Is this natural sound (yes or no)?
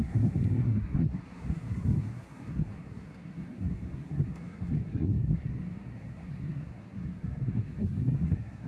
no